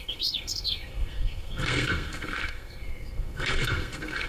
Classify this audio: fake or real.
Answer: fake